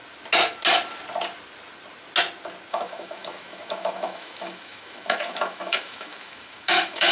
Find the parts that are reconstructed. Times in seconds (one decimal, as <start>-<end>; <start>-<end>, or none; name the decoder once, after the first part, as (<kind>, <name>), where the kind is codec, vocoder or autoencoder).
2.7-7.1 (autoencoder, DAC-VAE)